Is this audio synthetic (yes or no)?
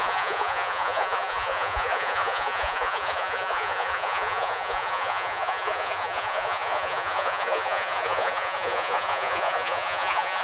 yes